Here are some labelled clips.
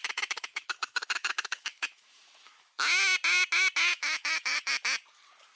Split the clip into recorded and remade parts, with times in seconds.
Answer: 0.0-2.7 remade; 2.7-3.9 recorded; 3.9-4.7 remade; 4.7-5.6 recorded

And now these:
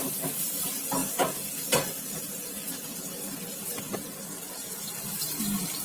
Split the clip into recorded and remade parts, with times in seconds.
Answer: 0.0-5.8 recorded

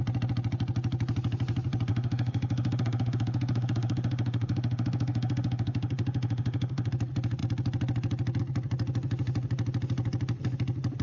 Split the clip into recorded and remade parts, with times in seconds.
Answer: 0.0-1.9 recorded; 1.9-6.9 remade; 6.9-11.0 recorded

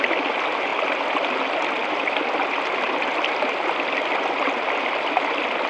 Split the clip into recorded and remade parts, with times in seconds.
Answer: 0.0-5.7 recorded